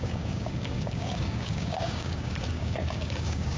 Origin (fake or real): fake